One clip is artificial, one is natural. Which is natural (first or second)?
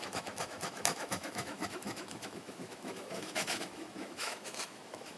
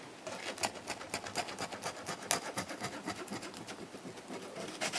second